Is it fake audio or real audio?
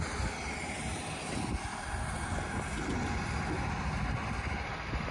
real